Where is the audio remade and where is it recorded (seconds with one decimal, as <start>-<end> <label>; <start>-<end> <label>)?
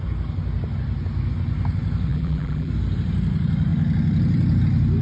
0.0-2.1 recorded; 2.1-2.7 remade; 2.7-5.0 recorded